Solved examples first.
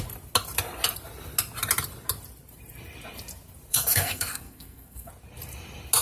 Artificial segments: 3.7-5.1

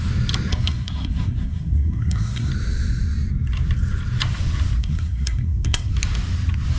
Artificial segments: 0.5-2.5; 4.8-5.9